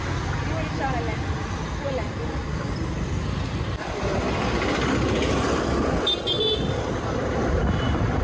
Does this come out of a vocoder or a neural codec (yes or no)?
no